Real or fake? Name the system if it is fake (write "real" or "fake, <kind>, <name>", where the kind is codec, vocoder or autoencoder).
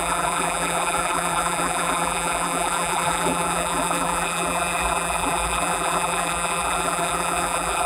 fake, vocoder, BigVGAN v2